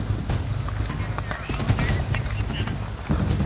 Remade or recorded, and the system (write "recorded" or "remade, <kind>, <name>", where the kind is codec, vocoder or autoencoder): recorded